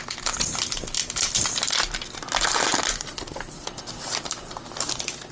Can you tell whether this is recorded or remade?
recorded